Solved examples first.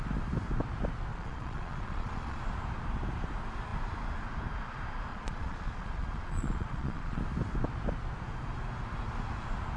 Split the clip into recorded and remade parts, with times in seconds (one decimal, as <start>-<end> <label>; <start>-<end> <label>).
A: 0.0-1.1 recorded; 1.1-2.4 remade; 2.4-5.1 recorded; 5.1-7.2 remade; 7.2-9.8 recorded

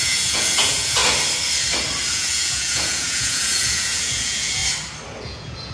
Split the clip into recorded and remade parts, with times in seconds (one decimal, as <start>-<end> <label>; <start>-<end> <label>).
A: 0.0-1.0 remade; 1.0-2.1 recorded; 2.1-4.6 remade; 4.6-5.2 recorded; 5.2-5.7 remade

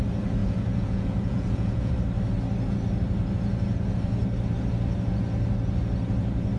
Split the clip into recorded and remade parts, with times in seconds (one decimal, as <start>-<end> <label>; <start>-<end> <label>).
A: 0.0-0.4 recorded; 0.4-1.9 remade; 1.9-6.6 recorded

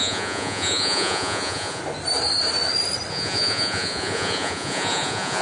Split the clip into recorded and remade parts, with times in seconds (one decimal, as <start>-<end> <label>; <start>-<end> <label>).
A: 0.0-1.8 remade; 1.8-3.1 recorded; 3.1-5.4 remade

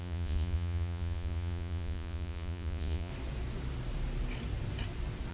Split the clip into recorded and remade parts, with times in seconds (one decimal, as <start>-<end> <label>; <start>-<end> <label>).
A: 0.0-3.1 remade; 3.1-5.3 recorded